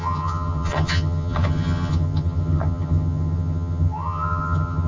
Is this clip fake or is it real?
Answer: fake